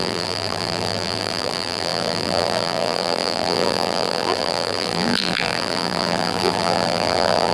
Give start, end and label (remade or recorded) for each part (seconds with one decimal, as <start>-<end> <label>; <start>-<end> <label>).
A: 0.0-7.5 remade